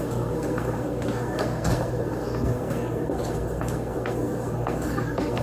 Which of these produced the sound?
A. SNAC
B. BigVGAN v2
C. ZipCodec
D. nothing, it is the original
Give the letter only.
A